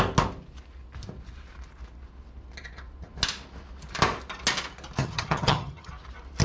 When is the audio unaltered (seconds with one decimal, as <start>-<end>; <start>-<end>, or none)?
0.0-5.0; 5.9-6.4

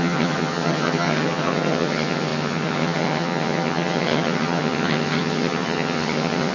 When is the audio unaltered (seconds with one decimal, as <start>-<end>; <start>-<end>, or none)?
none

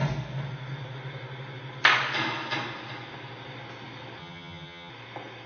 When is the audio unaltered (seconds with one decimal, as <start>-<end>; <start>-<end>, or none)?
0.0-4.2; 4.9-5.5

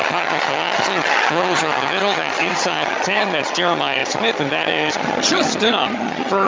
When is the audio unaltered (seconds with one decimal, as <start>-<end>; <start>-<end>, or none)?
none